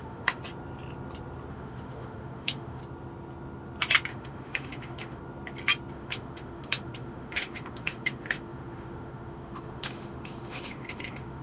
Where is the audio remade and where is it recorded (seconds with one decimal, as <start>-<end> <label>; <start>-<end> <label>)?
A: 0.0-0.4 remade; 0.4-1.5 recorded; 1.5-2.8 remade; 2.8-4.1 recorded; 4.1-5.2 remade; 5.2-5.9 recorded; 5.9-11.4 remade